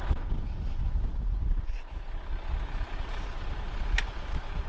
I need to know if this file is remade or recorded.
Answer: recorded